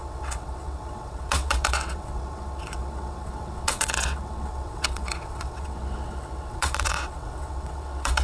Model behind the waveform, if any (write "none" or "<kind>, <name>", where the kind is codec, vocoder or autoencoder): vocoder, WaveNeXt